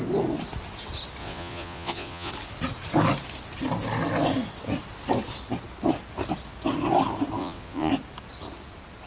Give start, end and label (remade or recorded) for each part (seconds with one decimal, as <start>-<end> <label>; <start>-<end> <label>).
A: 0.0-1.2 recorded; 1.2-2.3 remade; 2.3-7.4 recorded; 7.4-7.9 remade; 7.9-9.1 recorded